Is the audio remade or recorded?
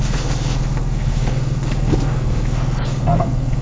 remade